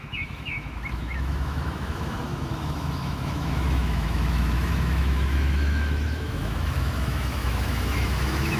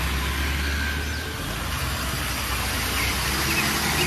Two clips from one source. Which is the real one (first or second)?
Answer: second